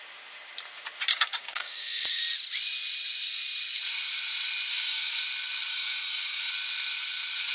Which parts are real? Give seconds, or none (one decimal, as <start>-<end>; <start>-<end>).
0.0-1.1; 2.2-4.7; 5.2-5.7; 6.5-7.5